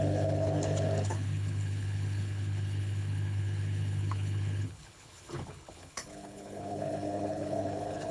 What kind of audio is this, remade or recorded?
remade